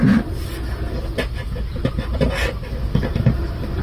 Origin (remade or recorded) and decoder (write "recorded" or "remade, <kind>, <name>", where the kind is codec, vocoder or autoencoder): recorded